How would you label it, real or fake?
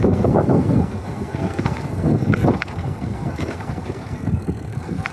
fake